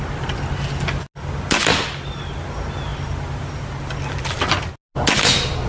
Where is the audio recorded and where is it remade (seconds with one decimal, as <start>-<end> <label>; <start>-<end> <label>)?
0.0-5.7 recorded